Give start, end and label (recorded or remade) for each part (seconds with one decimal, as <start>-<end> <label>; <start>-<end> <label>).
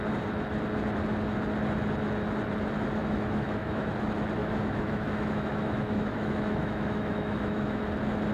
0.0-3.0 recorded; 3.0-3.9 remade; 3.9-4.4 recorded; 4.4-7.8 remade; 7.8-8.3 recorded